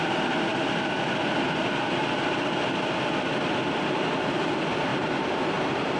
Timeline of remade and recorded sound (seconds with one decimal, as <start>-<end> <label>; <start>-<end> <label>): 0.0-4.9 recorded; 4.9-6.0 remade